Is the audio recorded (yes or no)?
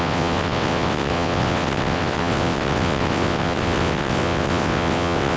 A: no